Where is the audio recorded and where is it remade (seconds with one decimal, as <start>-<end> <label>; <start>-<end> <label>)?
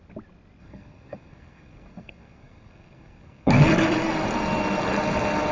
0.0-0.6 recorded; 0.6-3.5 remade; 3.5-5.5 recorded